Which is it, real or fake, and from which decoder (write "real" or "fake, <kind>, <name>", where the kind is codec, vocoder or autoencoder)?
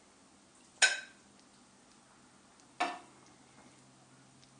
real